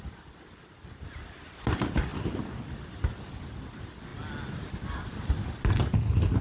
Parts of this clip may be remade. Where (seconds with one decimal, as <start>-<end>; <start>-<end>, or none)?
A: none